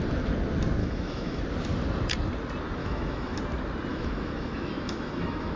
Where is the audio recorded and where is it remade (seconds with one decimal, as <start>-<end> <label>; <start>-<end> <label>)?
0.0-0.8 recorded; 0.8-1.4 remade; 1.4-2.8 recorded; 2.8-3.4 remade; 3.4-3.9 recorded; 3.9-5.6 remade